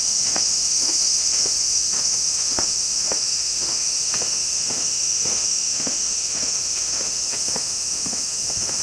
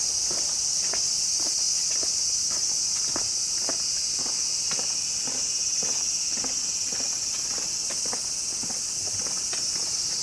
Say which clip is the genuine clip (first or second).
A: second